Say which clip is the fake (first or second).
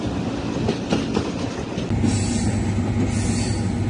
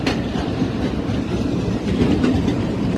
second